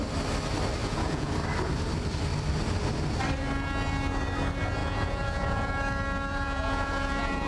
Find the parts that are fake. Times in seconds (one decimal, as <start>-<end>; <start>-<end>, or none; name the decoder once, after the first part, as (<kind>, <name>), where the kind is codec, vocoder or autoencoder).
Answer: 0.8-1.3 (vocoder, Vocos); 4.8-5.7; 6.3-7.5